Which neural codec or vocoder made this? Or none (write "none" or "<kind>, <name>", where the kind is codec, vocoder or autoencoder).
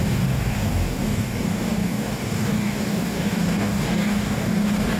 codec, DAC